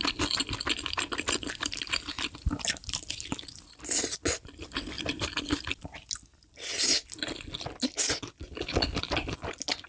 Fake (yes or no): no